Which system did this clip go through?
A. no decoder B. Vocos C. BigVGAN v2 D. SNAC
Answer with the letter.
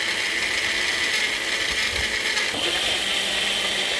A